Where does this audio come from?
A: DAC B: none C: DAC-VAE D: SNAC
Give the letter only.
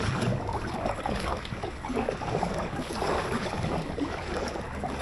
A